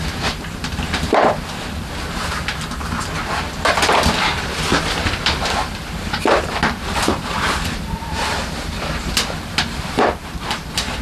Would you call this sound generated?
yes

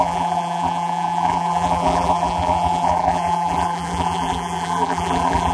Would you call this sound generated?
yes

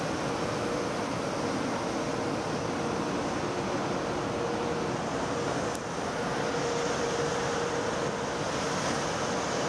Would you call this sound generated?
no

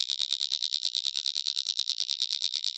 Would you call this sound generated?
yes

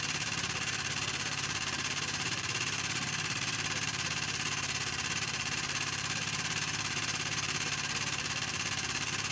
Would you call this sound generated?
yes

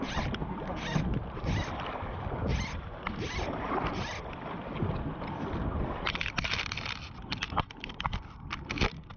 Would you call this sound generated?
yes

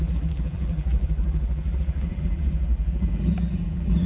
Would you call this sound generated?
yes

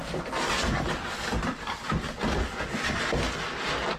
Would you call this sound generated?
yes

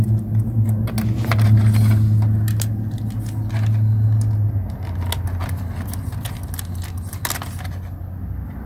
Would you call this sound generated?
no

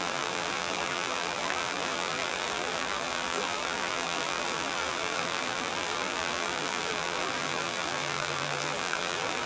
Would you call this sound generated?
yes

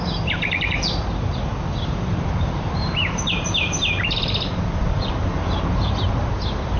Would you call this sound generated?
yes